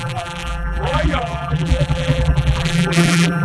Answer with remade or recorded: remade